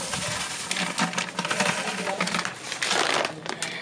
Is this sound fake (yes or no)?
no